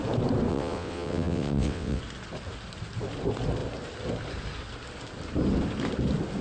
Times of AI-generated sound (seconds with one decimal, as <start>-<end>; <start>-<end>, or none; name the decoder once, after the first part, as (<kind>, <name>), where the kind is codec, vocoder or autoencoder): 0.5-2.0 (vocoder, WaveNeXt)